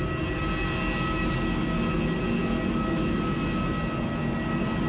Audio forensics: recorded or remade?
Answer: recorded